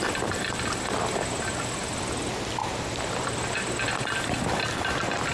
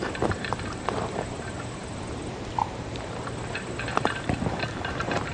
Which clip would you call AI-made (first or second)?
second